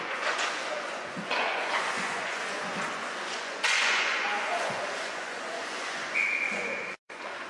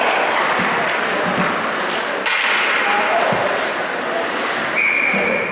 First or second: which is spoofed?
first